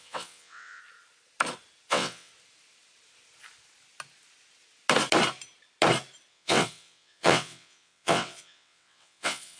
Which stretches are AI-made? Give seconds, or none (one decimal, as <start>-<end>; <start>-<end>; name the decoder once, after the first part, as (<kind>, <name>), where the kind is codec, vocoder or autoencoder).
0.0-0.8 (vocoder, WaveNeXt); 1.9-2.3; 6.3-9.6